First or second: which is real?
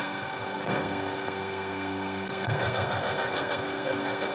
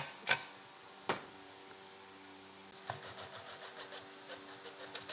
second